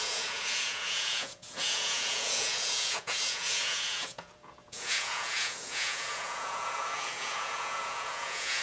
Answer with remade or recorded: remade